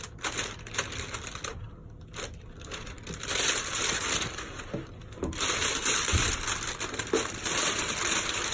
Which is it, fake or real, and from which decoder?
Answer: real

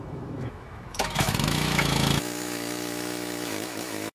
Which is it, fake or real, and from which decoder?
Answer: fake, autoencoder, DAC-VAE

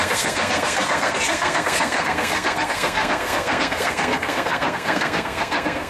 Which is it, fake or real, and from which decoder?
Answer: fake, codec, SNAC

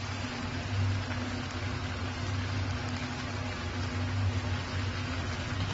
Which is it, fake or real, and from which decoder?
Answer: real